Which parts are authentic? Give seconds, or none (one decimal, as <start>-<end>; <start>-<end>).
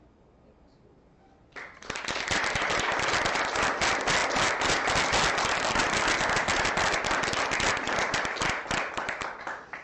0.0-9.8